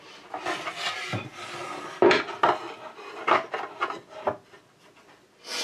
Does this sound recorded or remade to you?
recorded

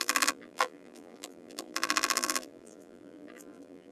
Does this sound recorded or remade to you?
remade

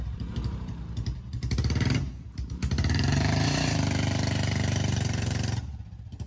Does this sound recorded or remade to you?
remade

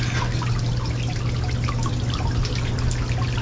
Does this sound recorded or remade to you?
recorded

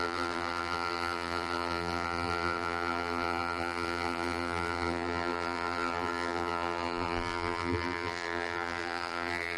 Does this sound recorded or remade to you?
remade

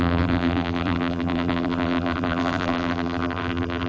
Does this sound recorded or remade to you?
remade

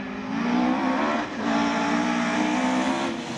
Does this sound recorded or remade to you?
recorded